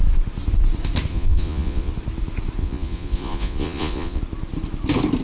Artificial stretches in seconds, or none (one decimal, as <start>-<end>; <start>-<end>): 1.1-1.9; 2.6-4.2